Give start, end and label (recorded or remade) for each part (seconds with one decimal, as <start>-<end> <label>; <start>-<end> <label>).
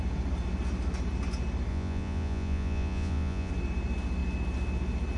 0.0-1.7 recorded; 1.7-3.5 remade; 3.5-5.2 recorded